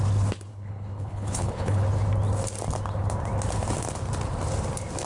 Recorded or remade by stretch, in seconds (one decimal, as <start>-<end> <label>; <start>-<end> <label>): 0.0-0.5 recorded; 0.5-1.8 remade; 1.8-5.1 recorded